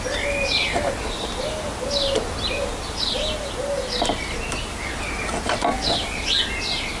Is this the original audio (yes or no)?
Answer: yes